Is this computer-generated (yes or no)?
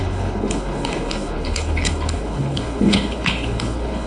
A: yes